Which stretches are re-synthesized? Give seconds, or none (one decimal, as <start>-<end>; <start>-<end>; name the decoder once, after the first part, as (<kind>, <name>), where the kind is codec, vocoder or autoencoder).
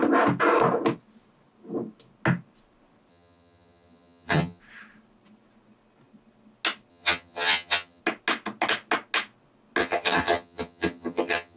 3.1-4.6 (vocoder, HiFi-GAN); 6.9-8.0; 9.8-11.6